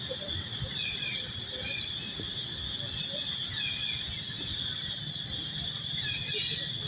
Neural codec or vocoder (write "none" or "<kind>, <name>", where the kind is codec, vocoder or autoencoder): none